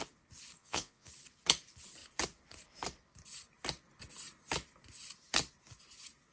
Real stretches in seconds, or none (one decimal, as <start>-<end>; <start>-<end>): 0.0-0.6; 1.1-6.3